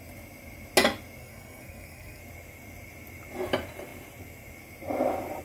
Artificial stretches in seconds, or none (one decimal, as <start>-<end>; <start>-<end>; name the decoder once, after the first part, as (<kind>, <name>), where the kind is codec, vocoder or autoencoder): 1.2-2.2 (codec, SNAC)